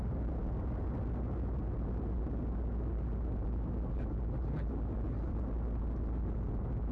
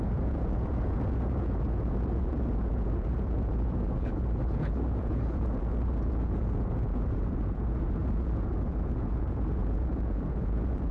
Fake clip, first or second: second